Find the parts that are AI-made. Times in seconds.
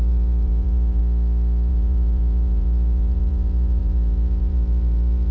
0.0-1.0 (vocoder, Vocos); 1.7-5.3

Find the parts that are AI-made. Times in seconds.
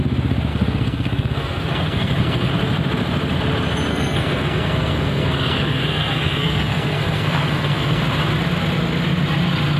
0.5-2.5 (codec, SNAC); 3.9-8.0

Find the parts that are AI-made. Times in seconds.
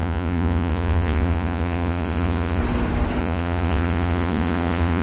0.0-2.6 (vocoder, Vocos); 3.2-5.0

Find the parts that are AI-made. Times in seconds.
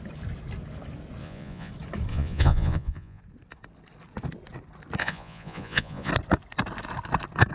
1.2-1.7 (vocoder, Vocos); 2.1-3.2; 5.0-6.1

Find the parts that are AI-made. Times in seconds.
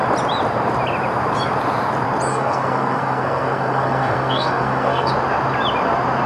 2.3-5.1 (codec, SNAC)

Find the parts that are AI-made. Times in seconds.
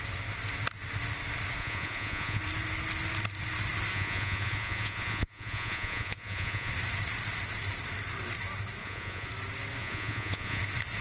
1.6-2.4 (vocoder, Vocos); 3.9-6.7; 8.8-9.3; 9.8-10.6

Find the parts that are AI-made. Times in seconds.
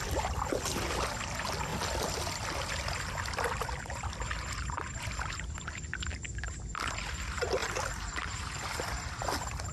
none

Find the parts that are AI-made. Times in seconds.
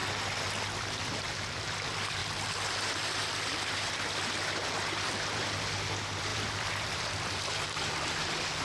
1.0-2.2 (vocoder, BigVGAN v2); 5.1-8.6